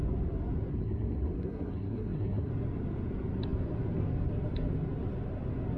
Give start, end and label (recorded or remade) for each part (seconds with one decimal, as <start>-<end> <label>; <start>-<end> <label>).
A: 0.0-0.7 recorded; 0.7-2.5 remade; 2.5-5.8 recorded